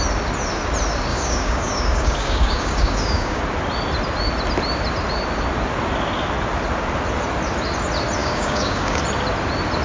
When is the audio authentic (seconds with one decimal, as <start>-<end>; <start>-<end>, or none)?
0.0-1.1; 3.4-8.2; 9.0-9.8